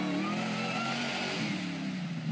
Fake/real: real